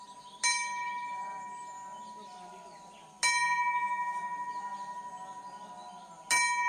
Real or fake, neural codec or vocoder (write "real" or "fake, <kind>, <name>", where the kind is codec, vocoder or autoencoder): real